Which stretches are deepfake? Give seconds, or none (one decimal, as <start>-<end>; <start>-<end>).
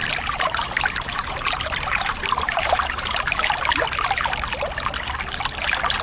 0.0-3.6